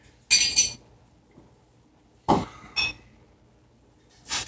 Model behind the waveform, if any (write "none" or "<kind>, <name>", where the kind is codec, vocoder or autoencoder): none